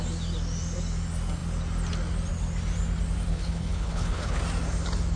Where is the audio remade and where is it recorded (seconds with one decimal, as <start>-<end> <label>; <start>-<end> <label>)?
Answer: 0.0-3.3 recorded; 3.3-4.4 remade; 4.4-5.2 recorded